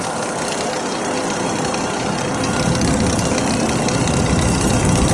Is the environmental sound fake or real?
real